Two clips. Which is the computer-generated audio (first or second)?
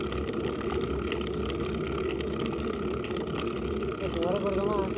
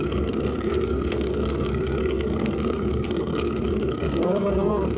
second